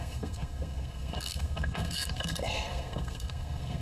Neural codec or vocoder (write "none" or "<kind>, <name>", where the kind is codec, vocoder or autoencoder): codec, SNAC